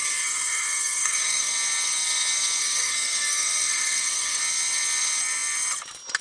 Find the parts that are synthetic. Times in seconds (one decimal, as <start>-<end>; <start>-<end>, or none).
0.0-1.5; 2.6-4.4